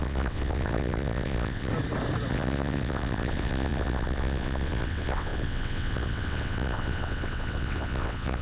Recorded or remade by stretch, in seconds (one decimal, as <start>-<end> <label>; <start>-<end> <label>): 0.0-1.7 remade; 1.7-2.3 recorded; 2.3-8.4 remade